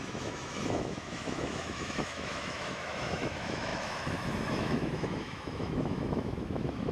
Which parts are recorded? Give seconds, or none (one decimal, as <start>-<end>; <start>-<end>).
none